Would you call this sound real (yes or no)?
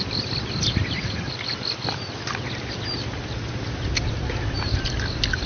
yes